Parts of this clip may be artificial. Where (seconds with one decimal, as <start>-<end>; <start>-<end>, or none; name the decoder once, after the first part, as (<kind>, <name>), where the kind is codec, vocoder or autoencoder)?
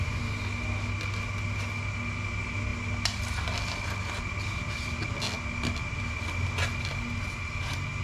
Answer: none